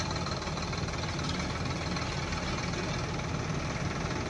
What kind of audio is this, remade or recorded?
recorded